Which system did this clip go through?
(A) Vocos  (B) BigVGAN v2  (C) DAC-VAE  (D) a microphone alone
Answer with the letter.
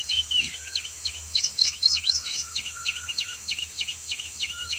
C